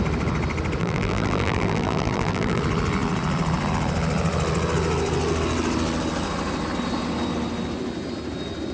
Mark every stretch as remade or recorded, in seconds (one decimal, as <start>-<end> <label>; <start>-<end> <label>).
0.0-0.8 recorded; 0.8-2.6 remade; 2.6-8.7 recorded